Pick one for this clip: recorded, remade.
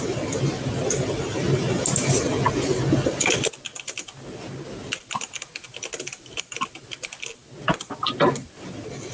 recorded